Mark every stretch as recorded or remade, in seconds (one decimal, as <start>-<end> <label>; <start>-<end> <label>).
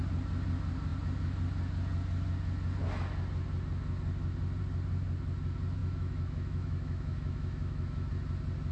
0.0-5.8 recorded; 5.8-8.1 remade; 8.1-8.7 recorded